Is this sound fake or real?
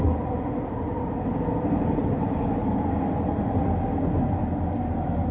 real